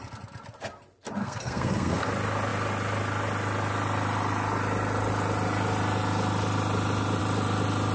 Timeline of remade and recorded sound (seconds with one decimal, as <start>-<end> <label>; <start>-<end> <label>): 0.0-1.2 recorded; 1.2-2.1 remade; 2.1-7.9 recorded